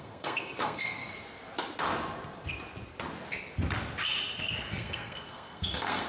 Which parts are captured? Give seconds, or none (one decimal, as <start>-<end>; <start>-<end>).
1.0-4.7